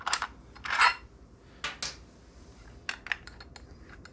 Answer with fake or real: real